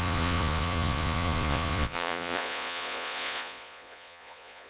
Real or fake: fake